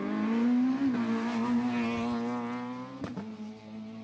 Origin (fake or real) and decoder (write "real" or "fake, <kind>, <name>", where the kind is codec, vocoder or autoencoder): real